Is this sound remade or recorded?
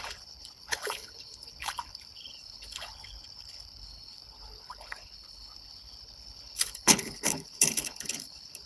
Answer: remade